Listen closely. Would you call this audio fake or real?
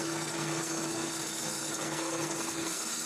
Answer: fake